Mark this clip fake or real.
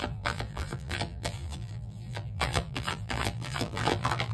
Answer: fake